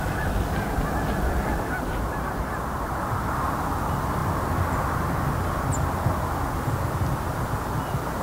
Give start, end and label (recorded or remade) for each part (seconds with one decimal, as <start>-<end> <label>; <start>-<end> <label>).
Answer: 0.0-8.2 recorded